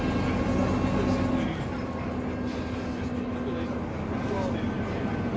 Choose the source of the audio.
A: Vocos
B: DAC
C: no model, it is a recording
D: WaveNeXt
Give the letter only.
C